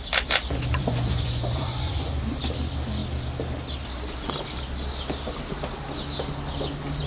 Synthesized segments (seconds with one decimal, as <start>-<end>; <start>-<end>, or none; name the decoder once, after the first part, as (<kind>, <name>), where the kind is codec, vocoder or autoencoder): 0.7-2.1 (vocoder, Vocos)